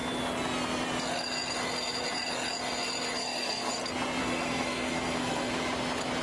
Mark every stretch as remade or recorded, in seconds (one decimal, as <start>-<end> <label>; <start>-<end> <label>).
0.0-3.2 recorded; 3.2-3.7 remade; 3.7-4.2 recorded; 4.2-5.5 remade; 5.5-6.2 recorded